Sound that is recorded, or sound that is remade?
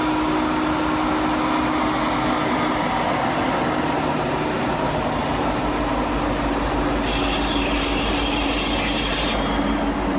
recorded